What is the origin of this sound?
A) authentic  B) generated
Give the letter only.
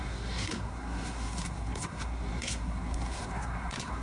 B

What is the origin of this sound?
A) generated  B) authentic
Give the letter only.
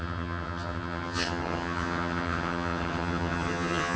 A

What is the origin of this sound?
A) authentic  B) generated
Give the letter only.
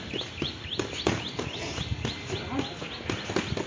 A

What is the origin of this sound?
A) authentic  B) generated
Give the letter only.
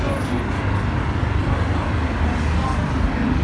A